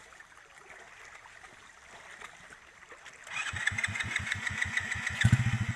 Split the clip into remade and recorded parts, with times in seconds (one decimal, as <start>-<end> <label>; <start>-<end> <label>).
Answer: 0.0-3.4 recorded; 3.4-5.3 remade; 5.3-5.8 recorded

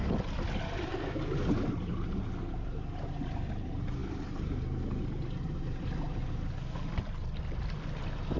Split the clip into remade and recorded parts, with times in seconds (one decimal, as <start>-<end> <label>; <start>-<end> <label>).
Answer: 0.0-8.4 recorded